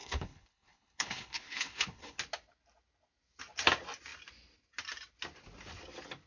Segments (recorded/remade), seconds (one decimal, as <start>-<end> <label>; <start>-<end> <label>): 0.0-2.2 remade; 2.2-6.3 recorded